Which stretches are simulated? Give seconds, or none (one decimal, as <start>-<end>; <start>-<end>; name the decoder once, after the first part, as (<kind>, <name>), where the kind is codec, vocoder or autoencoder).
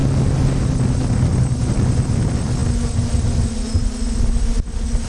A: none